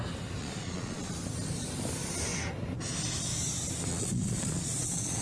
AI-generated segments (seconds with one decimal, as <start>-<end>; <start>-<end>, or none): 0.4-1.1; 3.9-5.2